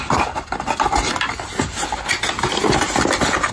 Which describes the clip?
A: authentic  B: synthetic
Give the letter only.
A